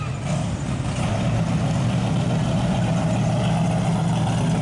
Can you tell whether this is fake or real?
real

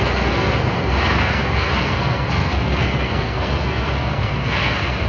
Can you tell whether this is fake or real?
fake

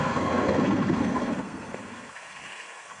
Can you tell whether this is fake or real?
fake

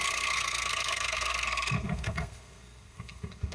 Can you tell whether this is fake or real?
fake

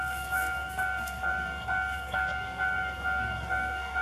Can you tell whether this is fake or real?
fake